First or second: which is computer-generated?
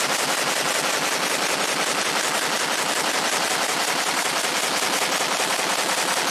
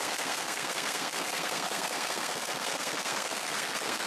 second